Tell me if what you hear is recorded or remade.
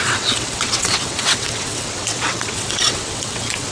remade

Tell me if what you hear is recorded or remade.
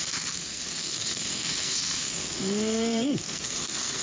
remade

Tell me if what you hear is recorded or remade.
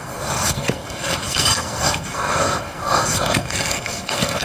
remade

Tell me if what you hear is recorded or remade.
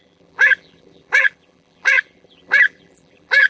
remade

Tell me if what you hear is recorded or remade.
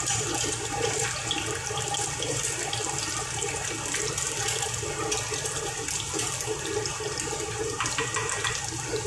recorded